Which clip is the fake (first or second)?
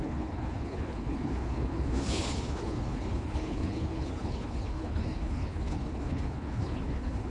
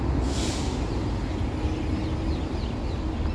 first